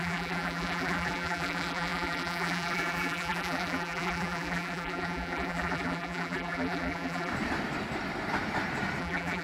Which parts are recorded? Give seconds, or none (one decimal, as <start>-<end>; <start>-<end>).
7.3-9.0